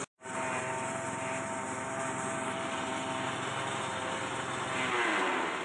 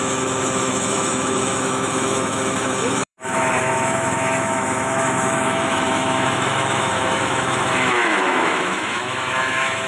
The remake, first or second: second